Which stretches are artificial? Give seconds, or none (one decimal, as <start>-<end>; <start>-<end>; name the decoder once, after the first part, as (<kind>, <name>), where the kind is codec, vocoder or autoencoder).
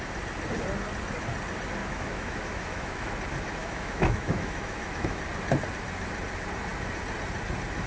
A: 1.8-3.1 (autoencoder, DAC-VAE); 3.6-5.2